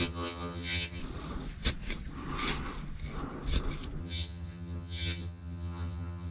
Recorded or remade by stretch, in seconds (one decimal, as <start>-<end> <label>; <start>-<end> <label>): 0.0-1.0 remade; 1.0-4.0 recorded; 4.0-6.3 remade